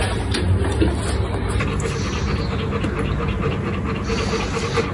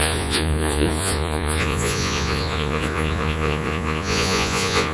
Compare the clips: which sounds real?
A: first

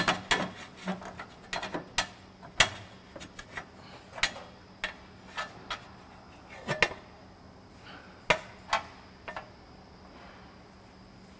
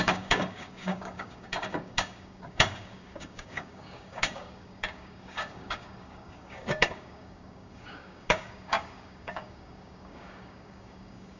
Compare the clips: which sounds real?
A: first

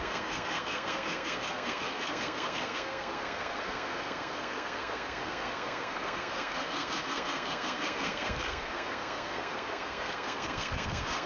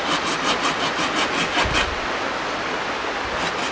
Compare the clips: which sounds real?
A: second